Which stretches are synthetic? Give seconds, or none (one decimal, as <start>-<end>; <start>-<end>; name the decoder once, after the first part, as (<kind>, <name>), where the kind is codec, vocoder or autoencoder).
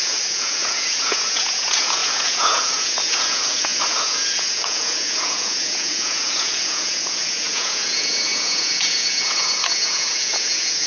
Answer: 0.0-10.9 (vocoder, Vocos)